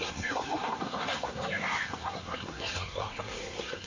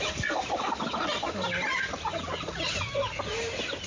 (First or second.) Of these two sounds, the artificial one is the first